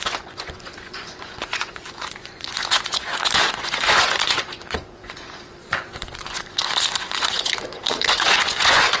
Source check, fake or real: fake